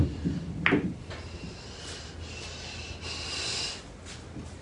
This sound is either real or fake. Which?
real